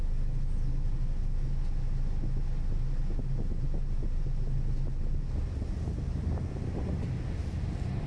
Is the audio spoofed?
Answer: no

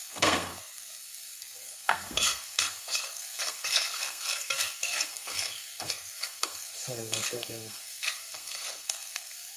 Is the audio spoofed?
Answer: yes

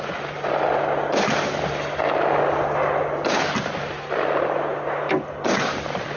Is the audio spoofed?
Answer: no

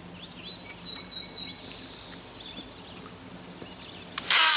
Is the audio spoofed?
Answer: no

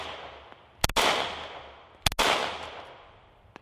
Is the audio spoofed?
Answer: no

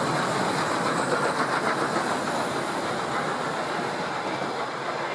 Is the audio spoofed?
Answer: no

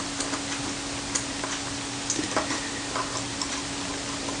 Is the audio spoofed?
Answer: no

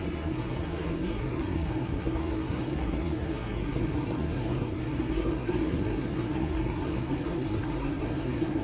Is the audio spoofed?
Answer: yes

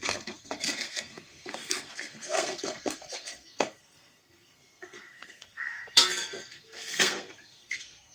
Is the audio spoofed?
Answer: yes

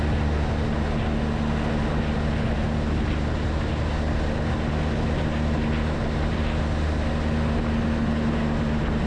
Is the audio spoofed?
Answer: no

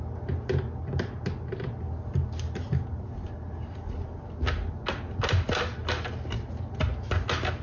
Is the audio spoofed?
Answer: no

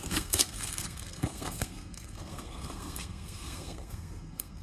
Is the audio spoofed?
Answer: yes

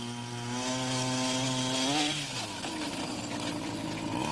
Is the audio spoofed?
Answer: no